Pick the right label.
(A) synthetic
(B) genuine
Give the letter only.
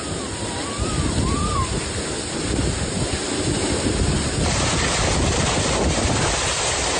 B